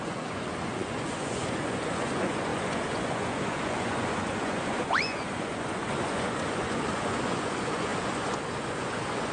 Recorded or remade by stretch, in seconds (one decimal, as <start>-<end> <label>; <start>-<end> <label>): 0.0-9.3 remade

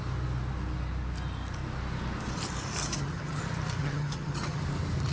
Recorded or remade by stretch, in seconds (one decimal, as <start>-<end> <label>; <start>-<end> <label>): 0.0-2.8 recorded; 2.8-3.4 remade; 3.4-3.8 recorded; 3.8-4.6 remade; 4.6-5.1 recorded

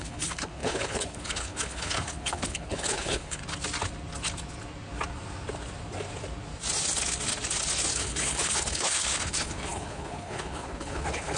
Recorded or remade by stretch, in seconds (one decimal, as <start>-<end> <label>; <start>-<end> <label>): 0.0-3.4 remade; 3.4-7.9 recorded; 7.9-11.4 remade

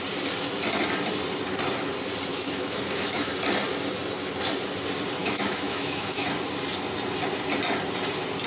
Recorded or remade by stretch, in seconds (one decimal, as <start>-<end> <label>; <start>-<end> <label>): 0.0-2.3 recorded; 2.3-3.3 remade; 3.3-5.2 recorded; 5.2-6.3 remade; 6.3-8.5 recorded